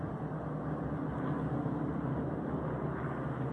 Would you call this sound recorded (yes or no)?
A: yes